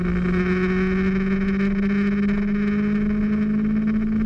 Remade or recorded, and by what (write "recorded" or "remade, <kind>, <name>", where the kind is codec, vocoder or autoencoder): recorded